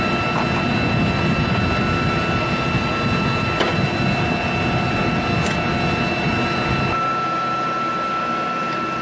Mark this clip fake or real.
real